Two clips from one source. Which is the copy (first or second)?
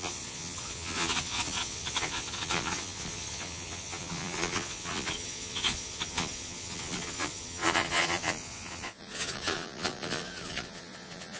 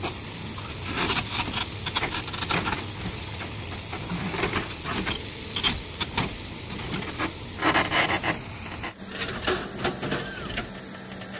first